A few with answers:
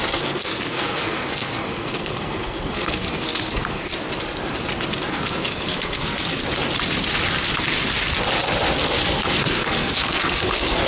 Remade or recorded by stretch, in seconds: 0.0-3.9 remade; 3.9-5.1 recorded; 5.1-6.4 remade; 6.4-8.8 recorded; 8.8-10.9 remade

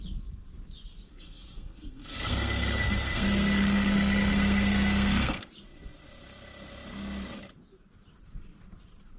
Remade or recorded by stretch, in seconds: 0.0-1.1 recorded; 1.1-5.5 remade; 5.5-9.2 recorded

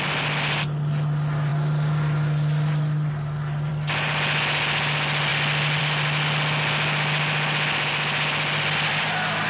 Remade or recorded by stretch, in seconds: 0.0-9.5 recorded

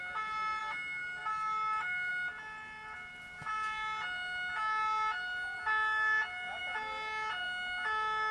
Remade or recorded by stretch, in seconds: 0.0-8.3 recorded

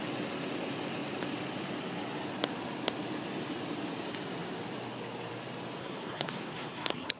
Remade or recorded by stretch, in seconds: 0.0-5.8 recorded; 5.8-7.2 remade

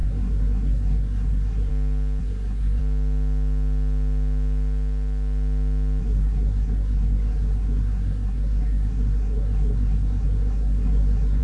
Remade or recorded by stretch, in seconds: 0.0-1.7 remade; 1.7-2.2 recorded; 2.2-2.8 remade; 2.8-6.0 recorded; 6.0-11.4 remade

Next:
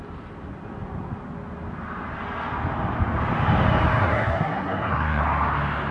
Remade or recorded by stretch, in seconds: 0.0-4.0 recorded; 4.0-5.2 remade; 5.2-5.9 recorded